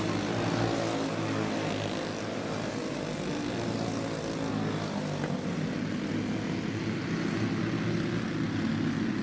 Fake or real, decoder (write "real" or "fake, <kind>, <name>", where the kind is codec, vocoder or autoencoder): real